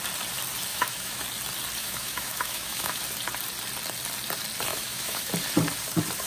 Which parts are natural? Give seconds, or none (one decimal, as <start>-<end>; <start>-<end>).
0.0-0.7; 1.2-1.8; 3.0-4.7; 5.3-6.3

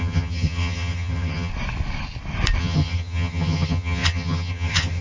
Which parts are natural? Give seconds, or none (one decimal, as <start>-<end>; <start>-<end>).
1.5-2.6

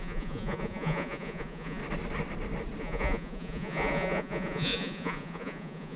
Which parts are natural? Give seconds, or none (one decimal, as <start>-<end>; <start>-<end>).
1.8-2.8

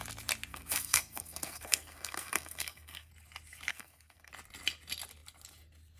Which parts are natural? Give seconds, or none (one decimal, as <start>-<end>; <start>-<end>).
0.0-0.5; 3.1-3.7; 4.3-6.0

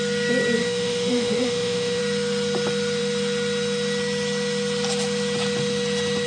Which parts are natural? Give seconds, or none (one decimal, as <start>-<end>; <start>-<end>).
0.0-0.6; 2.0-6.3